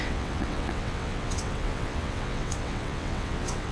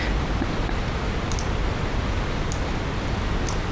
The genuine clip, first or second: second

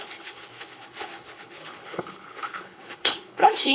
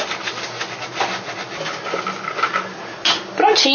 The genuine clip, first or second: second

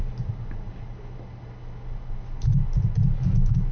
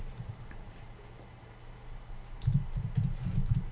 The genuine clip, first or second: first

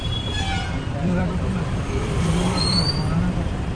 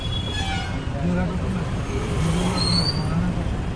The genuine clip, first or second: second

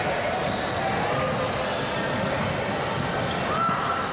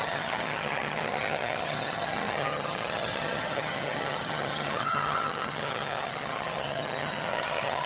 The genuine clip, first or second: first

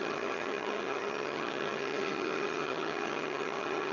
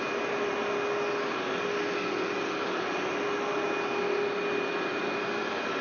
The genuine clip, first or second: second